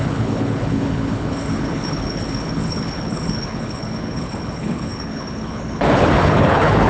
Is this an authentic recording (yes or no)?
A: no